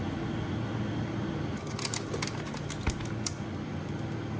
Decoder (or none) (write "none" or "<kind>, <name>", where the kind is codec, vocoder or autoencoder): none